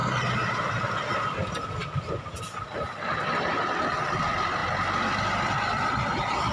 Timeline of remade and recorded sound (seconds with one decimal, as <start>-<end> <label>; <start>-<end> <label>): 0.0-1.1 recorded; 1.1-4.6 remade; 4.6-5.2 recorded; 5.2-6.5 remade